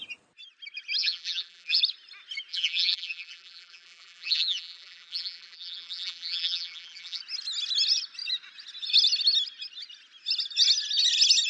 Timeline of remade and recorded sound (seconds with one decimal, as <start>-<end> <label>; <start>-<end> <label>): 0.0-1.0 recorded; 1.0-1.8 remade; 1.8-2.5 recorded; 2.5-7.2 remade; 7.2-11.5 recorded